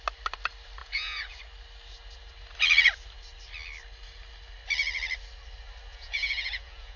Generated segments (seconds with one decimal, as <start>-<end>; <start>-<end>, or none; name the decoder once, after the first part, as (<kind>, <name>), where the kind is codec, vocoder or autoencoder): 0.8-1.4 (vocoder, Vocos); 5.9-7.0